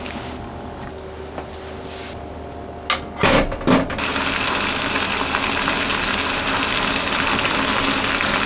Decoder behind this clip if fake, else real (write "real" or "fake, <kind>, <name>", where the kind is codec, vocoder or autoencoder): real